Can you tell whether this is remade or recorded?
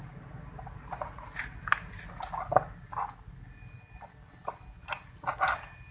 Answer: recorded